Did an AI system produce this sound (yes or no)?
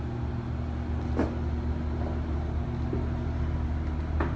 no